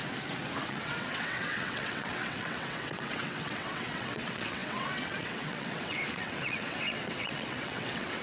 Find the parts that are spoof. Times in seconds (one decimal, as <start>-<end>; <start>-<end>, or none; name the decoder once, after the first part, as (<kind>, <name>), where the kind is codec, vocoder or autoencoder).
0.6-8.2 (vocoder, WaveNeXt)